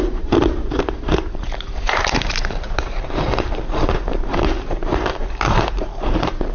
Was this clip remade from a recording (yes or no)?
yes